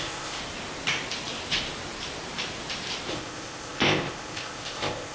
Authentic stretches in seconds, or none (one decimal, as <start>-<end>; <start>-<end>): 0.4-3.1